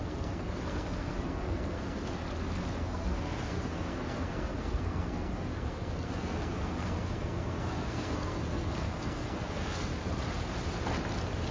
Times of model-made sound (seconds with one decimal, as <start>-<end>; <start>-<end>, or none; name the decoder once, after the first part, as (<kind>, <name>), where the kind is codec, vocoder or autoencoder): 0.0-2.2 (codec, SNAC); 2.7-9.9